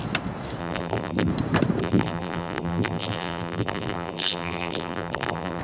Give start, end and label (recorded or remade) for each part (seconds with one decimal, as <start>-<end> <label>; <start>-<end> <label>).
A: 0.0-0.6 recorded; 0.6-1.3 remade; 1.3-1.8 recorded; 1.8-5.6 remade